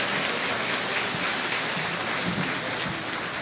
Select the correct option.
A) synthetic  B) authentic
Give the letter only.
B